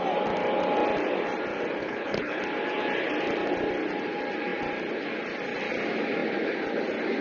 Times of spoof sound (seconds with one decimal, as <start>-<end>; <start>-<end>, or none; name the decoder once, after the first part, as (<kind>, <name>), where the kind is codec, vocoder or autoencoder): 1.8-2.4 (codec, HILCodec)